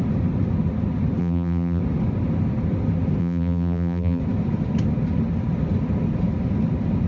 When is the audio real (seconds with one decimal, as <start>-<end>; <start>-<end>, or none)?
0.0-1.2; 1.8-3.2; 4.2-7.1

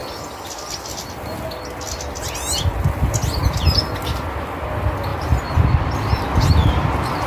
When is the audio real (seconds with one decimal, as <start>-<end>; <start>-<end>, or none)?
0.0-5.1; 6.2-7.3